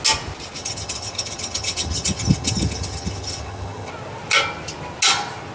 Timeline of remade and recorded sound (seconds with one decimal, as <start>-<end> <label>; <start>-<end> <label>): 0.0-0.6 recorded; 0.6-3.9 remade; 3.9-5.5 recorded